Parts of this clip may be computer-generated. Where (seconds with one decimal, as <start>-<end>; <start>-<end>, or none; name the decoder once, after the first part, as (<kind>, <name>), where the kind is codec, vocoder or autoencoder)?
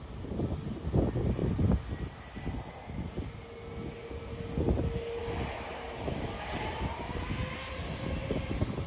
5.2-6.4 (autoencoder, DAC-VAE)